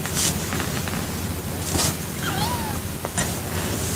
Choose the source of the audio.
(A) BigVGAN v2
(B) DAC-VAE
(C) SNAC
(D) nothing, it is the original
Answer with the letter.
D